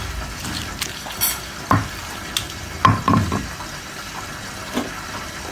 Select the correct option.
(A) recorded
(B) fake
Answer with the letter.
A